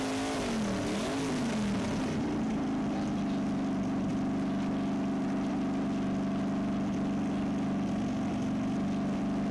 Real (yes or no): yes